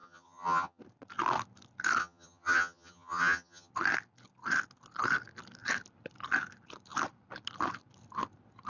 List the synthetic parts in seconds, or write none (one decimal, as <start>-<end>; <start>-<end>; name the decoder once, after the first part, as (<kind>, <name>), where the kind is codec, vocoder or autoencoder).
0.0-0.8 (vocoder, HiFi-GAN); 2.0-3.7